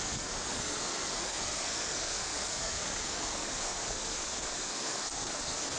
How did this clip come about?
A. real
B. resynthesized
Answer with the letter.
B